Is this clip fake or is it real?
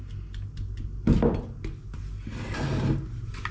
real